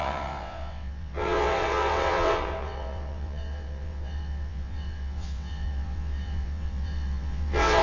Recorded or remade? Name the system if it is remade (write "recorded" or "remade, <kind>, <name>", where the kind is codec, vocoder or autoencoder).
remade, vocoder, WaveNeXt